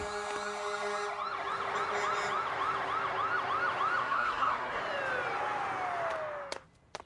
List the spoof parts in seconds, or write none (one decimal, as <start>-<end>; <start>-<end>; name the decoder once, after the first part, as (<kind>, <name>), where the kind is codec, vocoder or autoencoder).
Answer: 4.0-4.8 (codec, SNAC)